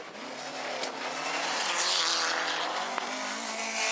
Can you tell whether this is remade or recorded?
recorded